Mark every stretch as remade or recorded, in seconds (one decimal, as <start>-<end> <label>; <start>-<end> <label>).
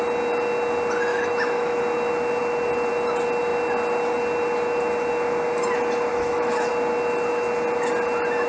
0.0-1.1 recorded; 1.1-1.8 remade; 1.8-6.1 recorded; 6.1-6.7 remade; 6.7-8.5 recorded